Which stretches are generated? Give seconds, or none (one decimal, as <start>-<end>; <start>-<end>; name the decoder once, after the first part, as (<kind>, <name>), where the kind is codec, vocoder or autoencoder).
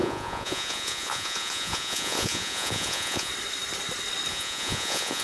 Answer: 0.0-3.3 (vocoder, Vocos); 4.3-5.2